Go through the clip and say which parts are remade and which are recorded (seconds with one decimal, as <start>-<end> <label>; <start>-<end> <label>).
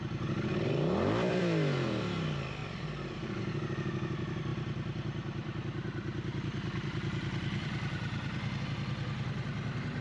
0.0-2.6 recorded; 2.6-3.4 remade; 3.4-4.5 recorded; 4.5-8.6 remade; 8.6-10.0 recorded